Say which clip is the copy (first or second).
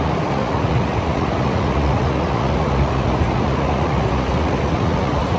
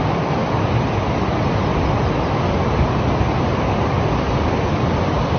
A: first